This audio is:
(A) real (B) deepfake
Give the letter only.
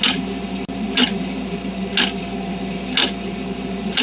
A